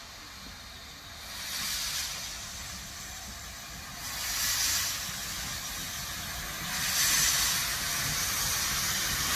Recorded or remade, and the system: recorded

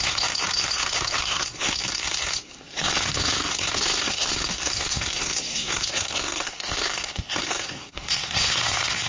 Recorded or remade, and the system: remade, codec, SNAC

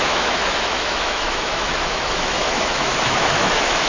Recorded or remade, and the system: remade, autoencoder, DAC-VAE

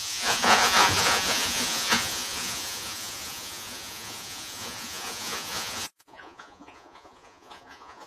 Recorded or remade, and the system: remade, vocoder, Vocos